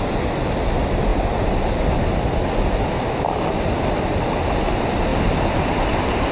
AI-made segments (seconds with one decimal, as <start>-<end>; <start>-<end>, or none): none

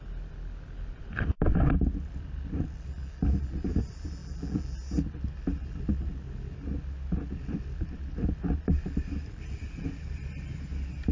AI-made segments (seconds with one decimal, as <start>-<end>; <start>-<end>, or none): none

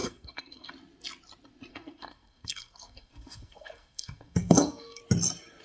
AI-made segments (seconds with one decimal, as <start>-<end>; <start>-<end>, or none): 0.0-0.7; 1.7-5.0

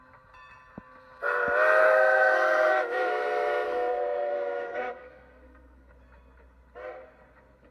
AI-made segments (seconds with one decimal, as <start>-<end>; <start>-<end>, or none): 1.8-5.9